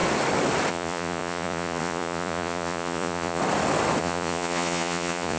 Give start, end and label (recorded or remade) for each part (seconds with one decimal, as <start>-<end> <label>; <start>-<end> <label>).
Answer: 0.0-0.7 recorded; 0.7-3.4 remade; 3.4-4.0 recorded; 4.0-5.4 remade